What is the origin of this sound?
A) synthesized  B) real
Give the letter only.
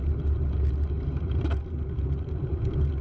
B